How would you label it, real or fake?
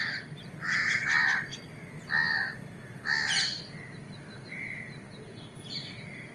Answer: real